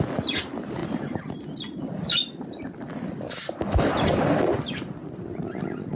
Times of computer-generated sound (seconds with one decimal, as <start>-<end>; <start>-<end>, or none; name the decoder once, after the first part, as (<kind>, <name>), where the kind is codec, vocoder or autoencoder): none